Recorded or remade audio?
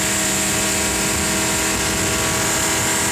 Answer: recorded